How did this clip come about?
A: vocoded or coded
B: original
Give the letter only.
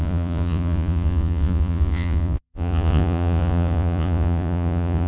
A